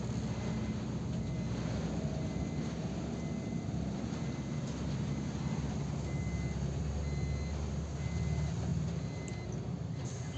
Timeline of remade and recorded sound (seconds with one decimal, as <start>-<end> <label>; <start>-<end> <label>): 0.0-10.4 recorded